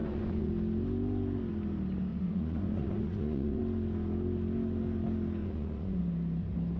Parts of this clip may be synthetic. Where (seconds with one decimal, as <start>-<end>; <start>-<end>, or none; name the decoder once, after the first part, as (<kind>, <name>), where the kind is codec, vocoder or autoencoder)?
0.0-0.5 (vocoder, Vocos); 2.1-3.6; 5.4-6.0